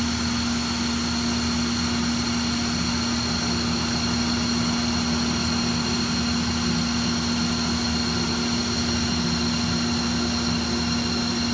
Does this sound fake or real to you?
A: real